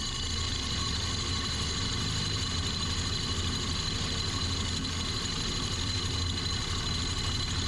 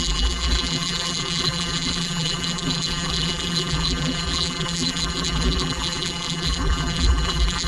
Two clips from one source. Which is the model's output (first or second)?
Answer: second